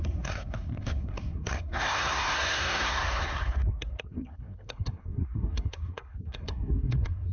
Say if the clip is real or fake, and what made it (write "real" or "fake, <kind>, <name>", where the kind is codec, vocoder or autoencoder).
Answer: fake, codec, SNAC